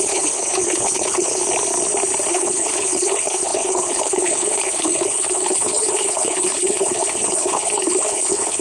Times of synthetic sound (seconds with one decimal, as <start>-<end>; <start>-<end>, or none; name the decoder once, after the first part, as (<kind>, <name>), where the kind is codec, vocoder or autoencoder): 0.0-1.4 (codec, HILCodec); 2.3-8.6